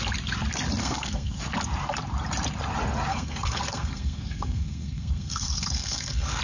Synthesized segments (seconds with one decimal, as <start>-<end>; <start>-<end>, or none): 0.8-1.4; 3.1-6.4